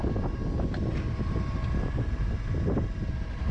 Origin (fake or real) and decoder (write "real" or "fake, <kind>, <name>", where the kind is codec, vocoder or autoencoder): real